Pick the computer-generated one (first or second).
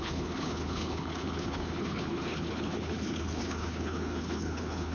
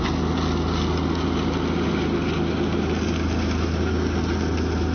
first